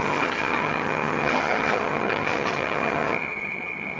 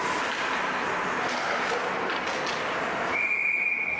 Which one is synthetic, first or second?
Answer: first